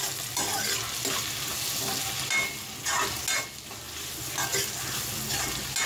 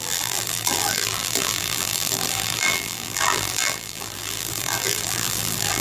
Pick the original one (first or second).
first